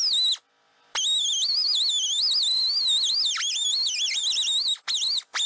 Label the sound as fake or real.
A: real